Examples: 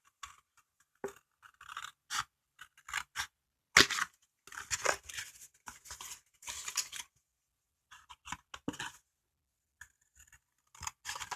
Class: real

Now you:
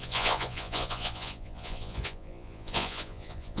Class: fake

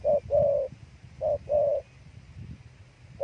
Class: real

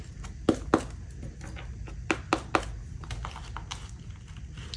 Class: real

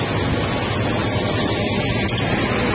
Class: real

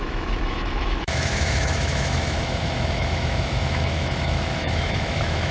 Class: fake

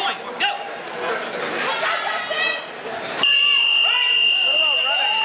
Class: real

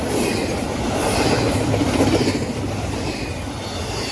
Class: real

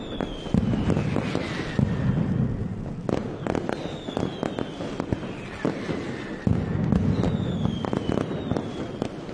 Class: real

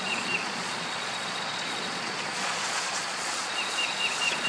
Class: fake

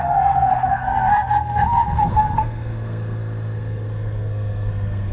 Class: fake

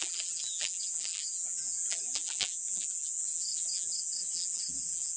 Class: fake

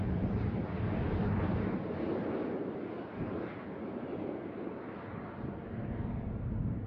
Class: real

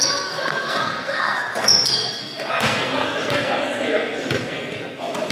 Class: fake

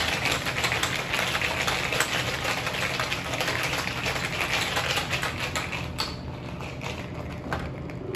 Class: real